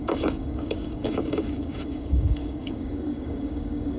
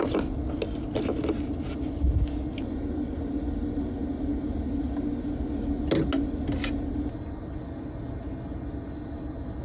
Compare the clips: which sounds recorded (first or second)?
second